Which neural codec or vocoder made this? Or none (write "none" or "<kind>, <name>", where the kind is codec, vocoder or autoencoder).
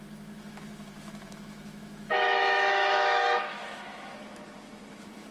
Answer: autoencoder, DAC-VAE